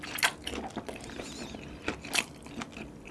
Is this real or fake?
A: real